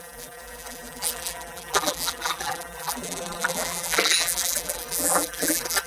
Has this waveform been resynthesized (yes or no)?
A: yes